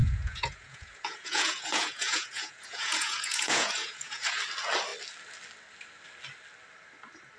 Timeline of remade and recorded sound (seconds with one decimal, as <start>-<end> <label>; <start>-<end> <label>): 0.0-4.4 remade; 4.4-7.4 recorded

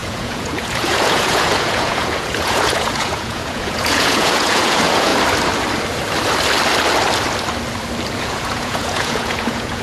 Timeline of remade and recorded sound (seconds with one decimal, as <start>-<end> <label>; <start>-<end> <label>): 0.0-5.1 remade; 5.1-8.2 recorded; 8.2-9.8 remade

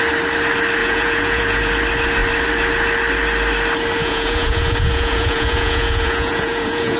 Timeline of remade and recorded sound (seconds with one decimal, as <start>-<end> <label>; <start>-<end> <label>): 0.0-0.8 recorded; 0.8-1.7 remade; 1.7-4.0 recorded; 4.0-7.0 remade

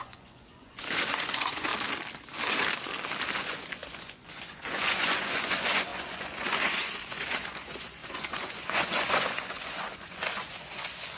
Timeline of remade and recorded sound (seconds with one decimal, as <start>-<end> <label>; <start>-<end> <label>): 0.0-1.7 remade; 1.7-3.4 recorded; 3.4-11.2 remade